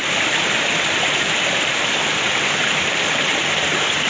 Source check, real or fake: fake